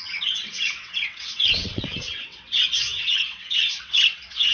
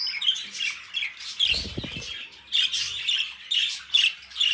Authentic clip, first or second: second